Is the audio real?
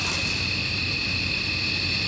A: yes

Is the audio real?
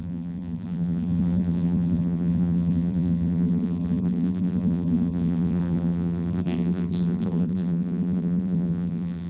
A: no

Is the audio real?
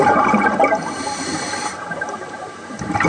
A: no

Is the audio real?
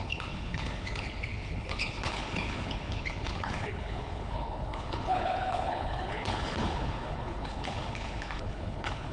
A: no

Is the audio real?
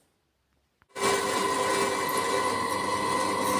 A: yes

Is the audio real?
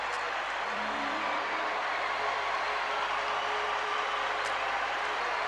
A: no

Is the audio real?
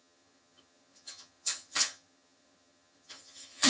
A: no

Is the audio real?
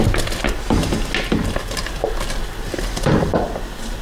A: yes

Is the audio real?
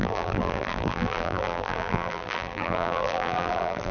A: no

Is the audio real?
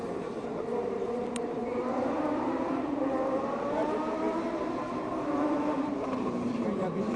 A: no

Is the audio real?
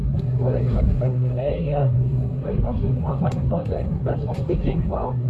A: no